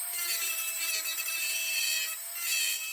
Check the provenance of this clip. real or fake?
real